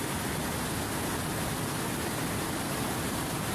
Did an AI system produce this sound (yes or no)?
no